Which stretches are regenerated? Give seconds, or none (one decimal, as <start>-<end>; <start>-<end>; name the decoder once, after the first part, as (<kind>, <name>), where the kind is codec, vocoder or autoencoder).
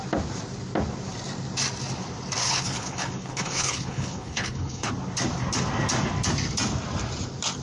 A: 2.4-4.9 (codec, HILCodec)